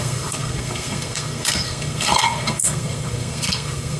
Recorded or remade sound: remade